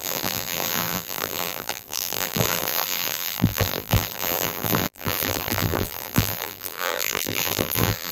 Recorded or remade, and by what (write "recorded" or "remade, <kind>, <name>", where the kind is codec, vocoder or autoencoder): remade, vocoder, BigVGAN v2